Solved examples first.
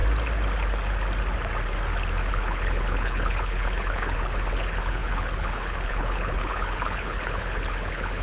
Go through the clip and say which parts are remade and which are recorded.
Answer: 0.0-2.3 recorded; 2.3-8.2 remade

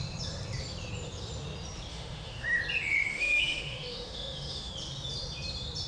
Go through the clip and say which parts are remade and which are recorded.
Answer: 0.0-1.9 recorded; 1.9-2.6 remade; 2.6-3.1 recorded; 3.1-4.7 remade; 4.7-5.9 recorded

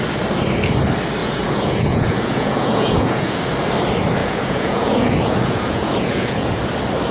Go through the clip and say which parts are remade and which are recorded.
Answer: 0.0-1.2 recorded; 1.2-3.4 remade; 3.4-4.2 recorded; 4.2-6.6 remade; 6.6-7.1 recorded

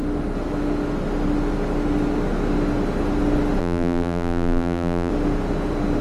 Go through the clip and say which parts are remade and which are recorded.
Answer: 0.0-3.6 recorded; 3.6-5.1 remade; 5.1-6.0 recorded